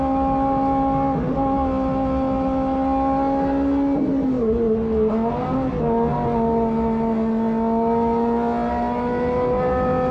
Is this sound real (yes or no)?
yes